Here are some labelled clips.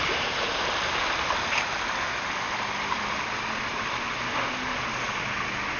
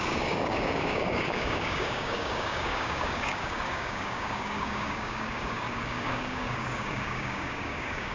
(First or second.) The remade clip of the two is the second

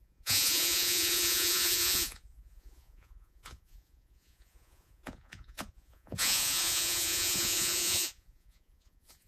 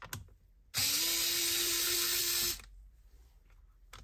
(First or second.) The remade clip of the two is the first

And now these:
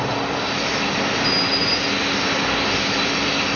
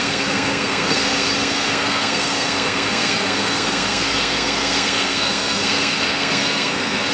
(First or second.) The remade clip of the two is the second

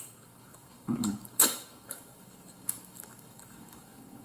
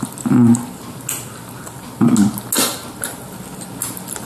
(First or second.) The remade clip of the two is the first